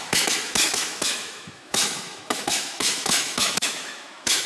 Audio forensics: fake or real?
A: fake